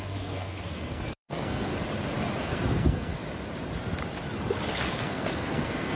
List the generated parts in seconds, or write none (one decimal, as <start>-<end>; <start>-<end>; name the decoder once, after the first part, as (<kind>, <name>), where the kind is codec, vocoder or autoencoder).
0.0-1.7 (codec, SNAC); 2.4-3.1; 4.7-6.0

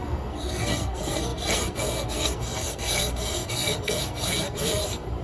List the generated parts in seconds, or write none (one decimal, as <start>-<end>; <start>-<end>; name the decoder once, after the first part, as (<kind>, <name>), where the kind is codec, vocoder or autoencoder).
0.0-5.2 (codec, SNAC)

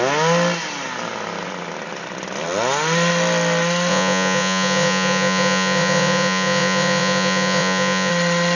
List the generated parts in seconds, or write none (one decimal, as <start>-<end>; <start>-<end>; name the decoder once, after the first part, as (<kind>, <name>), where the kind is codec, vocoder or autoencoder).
3.9-8.1 (vocoder, Vocos)

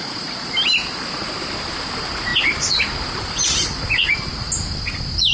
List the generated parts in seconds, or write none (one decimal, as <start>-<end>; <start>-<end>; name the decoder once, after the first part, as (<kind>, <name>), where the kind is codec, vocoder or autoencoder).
none